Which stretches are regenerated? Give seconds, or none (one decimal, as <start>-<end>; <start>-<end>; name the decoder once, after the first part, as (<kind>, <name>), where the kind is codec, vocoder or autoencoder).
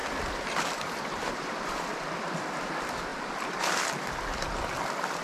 0.0-1.7 (vocoder, BigVGAN v2)